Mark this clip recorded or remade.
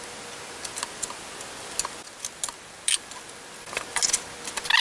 recorded